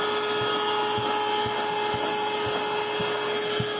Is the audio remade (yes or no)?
no